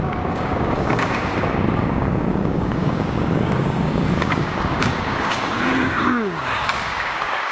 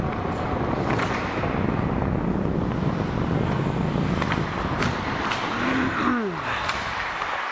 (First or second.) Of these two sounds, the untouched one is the second